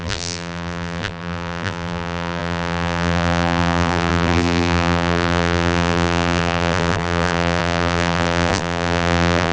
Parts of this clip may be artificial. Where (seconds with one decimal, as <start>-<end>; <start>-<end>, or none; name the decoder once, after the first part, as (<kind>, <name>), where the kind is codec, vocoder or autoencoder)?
0.0-9.5 (vocoder, BigVGAN v2)